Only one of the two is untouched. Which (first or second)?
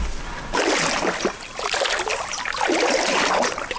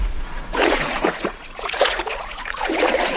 first